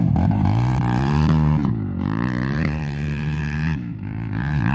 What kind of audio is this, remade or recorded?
remade